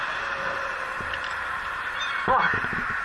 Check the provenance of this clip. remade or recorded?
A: remade